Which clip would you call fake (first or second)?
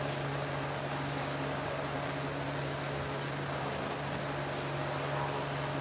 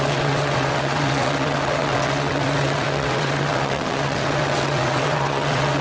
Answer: second